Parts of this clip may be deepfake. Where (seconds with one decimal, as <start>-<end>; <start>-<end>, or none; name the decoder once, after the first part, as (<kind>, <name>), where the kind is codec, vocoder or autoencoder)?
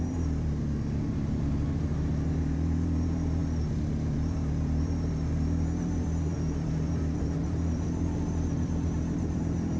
0.0-9.8 (vocoder, BigVGAN v2)